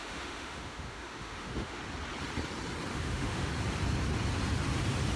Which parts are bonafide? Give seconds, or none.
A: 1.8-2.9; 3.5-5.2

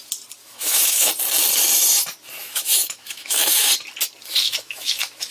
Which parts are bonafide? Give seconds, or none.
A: 0.0-0.4; 1.1-2.4; 3.7-4.4

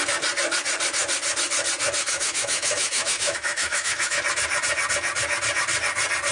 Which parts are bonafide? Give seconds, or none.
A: 0.0-2.0; 4.2-6.3

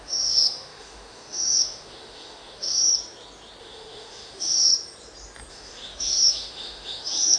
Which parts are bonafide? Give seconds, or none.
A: 2.9-3.6; 4.7-5.5

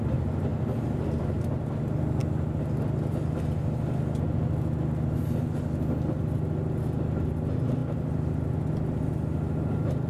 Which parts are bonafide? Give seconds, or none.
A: 0.0-10.1